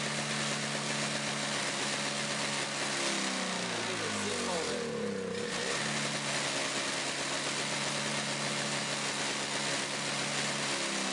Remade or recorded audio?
recorded